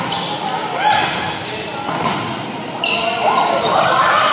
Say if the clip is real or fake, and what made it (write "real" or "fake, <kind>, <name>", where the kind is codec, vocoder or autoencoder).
real